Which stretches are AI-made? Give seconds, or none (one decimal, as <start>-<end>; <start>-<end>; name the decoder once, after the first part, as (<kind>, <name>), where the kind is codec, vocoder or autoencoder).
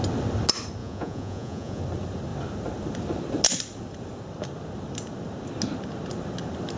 0.8-1.8 (vocoder, Vocos)